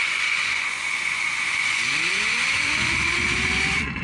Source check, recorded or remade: remade